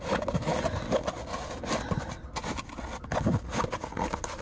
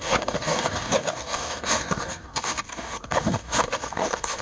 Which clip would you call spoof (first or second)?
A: second